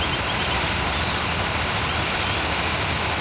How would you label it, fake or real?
real